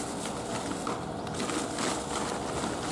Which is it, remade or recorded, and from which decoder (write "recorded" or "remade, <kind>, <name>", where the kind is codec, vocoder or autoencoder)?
recorded